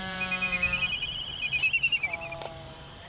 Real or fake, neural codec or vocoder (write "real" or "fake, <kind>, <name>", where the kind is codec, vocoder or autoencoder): fake, vocoder, BigVGAN v2